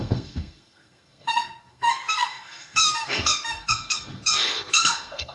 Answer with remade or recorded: remade